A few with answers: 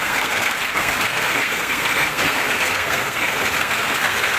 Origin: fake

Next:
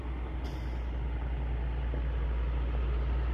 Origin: real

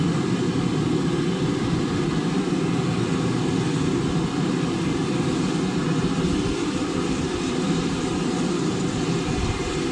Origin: fake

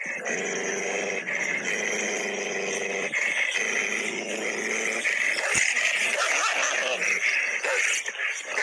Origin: real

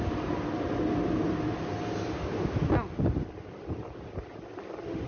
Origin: real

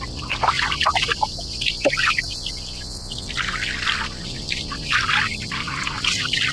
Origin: real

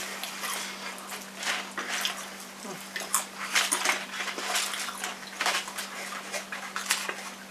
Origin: real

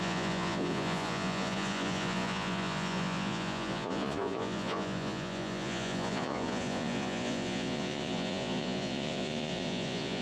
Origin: fake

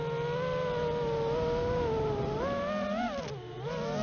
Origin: real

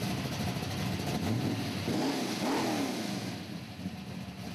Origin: real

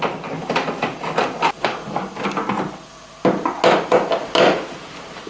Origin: real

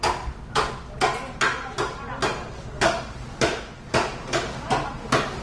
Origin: real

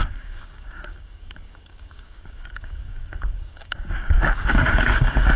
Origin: fake